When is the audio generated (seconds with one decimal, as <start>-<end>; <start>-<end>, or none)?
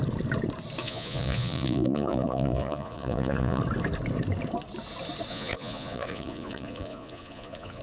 0.8-3.6; 5.3-7.8